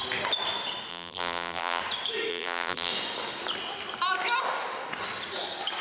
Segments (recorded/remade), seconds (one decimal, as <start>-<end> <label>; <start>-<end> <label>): 0.0-0.9 recorded; 0.9-1.8 remade; 1.8-2.3 recorded; 2.3-2.9 remade; 2.9-5.8 recorded